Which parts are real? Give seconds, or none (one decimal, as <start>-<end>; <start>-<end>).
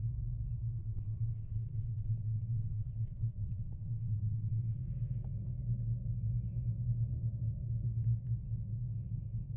0.0-0.8; 4.8-9.6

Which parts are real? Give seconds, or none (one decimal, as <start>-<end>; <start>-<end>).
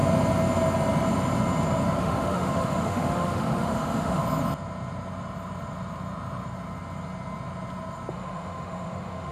0.0-2.0; 4.2-8.1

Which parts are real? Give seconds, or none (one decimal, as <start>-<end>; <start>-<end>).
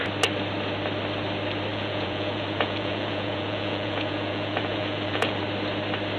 0.0-1.7; 5.4-6.2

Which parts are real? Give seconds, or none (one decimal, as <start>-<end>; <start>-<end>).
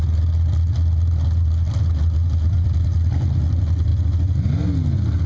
0.0-5.3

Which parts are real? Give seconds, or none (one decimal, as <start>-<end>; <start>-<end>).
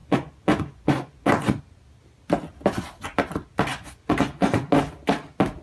1.6-3.7; 4.7-5.6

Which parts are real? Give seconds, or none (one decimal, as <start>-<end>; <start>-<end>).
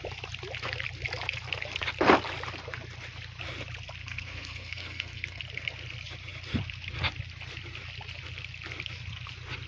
0.0-4.0; 5.4-9.7